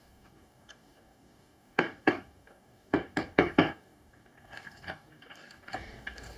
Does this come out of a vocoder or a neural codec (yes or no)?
yes